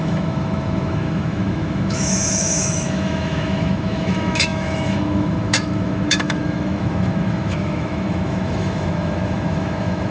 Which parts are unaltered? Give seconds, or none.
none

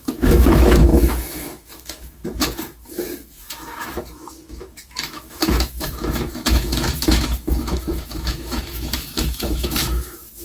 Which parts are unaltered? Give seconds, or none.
none